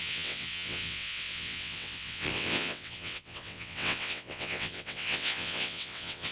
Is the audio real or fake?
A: fake